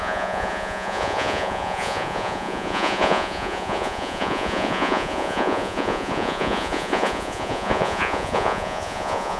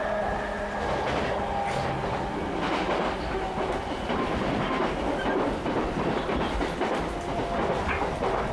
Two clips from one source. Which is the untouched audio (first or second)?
second